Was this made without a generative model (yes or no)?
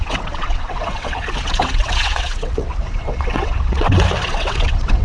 no